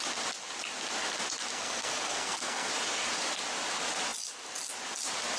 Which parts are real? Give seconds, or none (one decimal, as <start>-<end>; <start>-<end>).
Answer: 0.0-1.5; 2.7-5.4